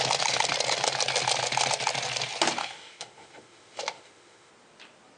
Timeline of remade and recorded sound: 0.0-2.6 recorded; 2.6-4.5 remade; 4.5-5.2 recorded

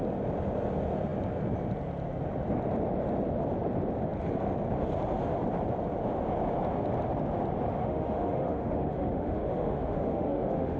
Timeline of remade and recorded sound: 0.0-7.8 recorded; 7.8-10.8 remade

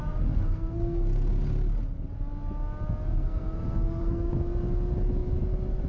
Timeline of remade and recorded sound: 0.0-1.3 remade; 1.3-3.1 recorded; 3.1-4.3 remade; 4.3-5.9 recorded

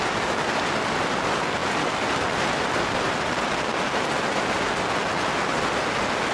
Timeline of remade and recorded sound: 0.0-6.3 recorded

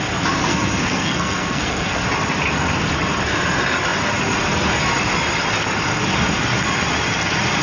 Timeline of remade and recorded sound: 0.0-0.5 recorded; 0.5-2.0 remade; 2.0-7.6 recorded

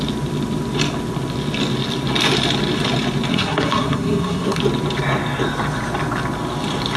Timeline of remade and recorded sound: 0.0-3.3 recorded; 3.3-4.6 remade; 4.6-7.0 recorded

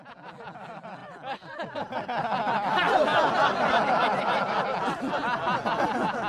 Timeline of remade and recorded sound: 0.0-6.3 recorded

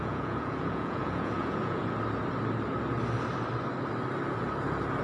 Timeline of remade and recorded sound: 0.0-1.8 remade; 1.8-5.0 recorded